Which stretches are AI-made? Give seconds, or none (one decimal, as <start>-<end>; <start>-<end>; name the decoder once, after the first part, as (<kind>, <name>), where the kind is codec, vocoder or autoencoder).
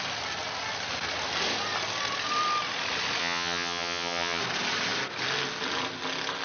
3.2-4.4 (vocoder, HiFi-GAN)